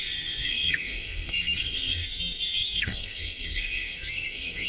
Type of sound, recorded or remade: remade